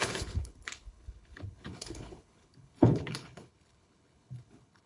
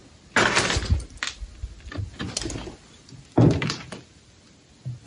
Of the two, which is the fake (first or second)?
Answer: first